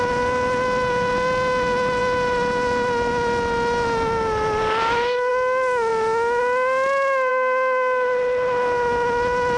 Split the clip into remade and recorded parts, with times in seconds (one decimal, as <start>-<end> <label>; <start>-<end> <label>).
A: 0.0-9.6 recorded